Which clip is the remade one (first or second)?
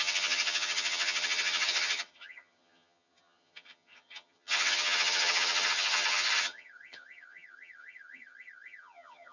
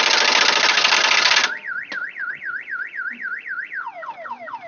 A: first